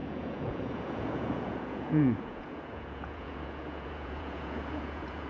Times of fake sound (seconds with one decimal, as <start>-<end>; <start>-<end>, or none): 0.0-5.3